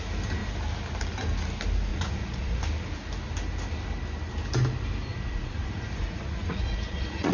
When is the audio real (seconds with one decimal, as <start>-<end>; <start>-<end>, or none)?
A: 0.0-1.9; 2.6-5.1